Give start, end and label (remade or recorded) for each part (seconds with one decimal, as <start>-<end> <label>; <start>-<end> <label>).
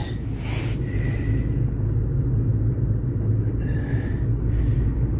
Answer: 0.0-2.5 recorded; 2.5-5.2 remade